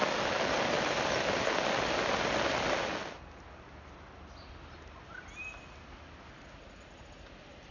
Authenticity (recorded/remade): recorded